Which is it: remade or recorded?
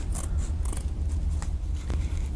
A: recorded